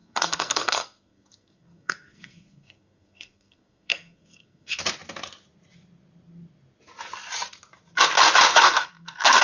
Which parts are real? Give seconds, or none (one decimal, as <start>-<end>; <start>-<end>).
4.8-8.5